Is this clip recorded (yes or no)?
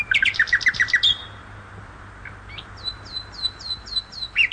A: no